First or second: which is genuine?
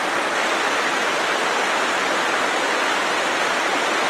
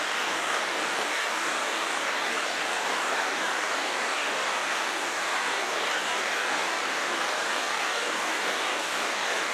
first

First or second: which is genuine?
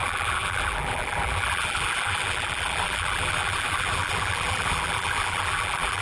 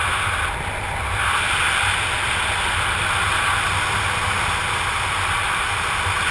second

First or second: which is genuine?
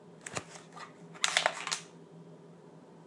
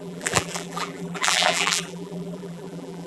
first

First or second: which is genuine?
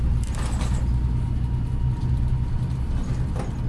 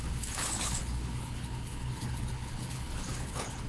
first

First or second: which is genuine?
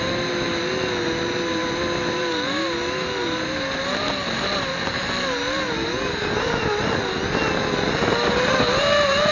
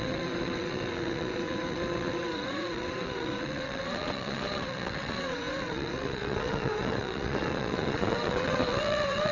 first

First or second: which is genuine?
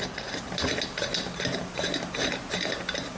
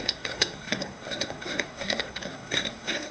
first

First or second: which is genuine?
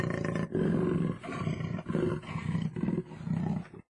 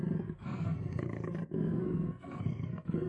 first